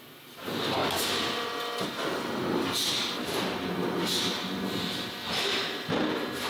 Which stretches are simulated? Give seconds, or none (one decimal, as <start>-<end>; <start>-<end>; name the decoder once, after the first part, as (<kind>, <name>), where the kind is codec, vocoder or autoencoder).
none